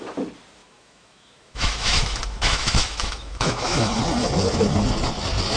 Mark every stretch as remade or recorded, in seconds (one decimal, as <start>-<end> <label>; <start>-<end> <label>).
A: 0.0-0.6 recorded; 0.6-4.0 remade; 4.0-5.6 recorded